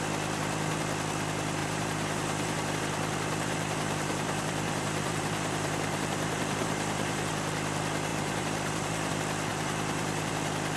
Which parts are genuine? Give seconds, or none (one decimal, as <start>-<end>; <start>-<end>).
0.0-1.6; 2.7-3.3; 7.3-8.1; 9.1-9.5; 10.3-10.8